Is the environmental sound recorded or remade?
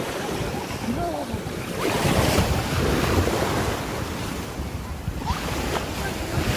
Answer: remade